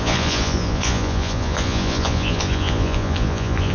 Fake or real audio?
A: fake